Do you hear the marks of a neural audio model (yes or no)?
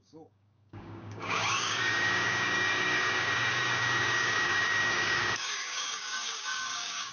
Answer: yes